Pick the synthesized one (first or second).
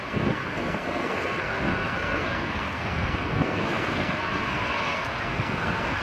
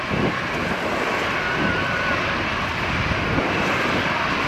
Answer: first